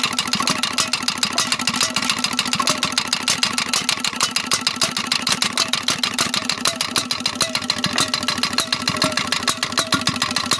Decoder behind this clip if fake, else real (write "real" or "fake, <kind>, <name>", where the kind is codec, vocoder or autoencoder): real